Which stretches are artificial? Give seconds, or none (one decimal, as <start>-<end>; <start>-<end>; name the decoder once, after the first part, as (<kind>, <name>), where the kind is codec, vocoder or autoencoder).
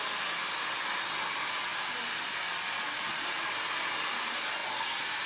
1.7-4.1 (vocoder, BigVGAN v2)